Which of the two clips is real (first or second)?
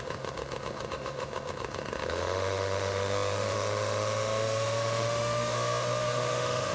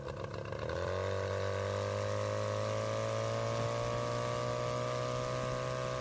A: second